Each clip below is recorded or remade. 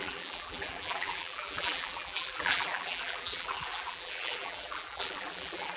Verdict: remade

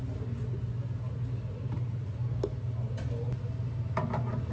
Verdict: recorded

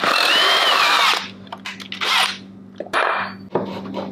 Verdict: recorded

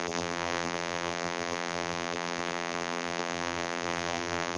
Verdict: remade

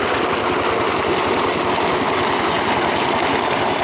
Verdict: recorded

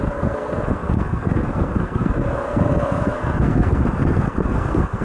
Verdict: remade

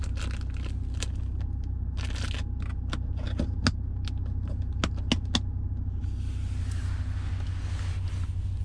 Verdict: recorded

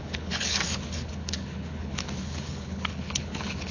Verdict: remade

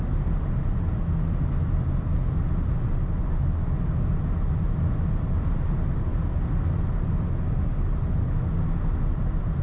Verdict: recorded